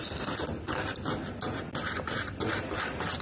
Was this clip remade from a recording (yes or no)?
no